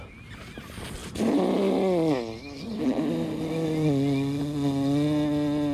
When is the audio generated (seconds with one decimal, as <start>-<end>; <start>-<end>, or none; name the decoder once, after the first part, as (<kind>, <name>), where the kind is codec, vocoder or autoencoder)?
none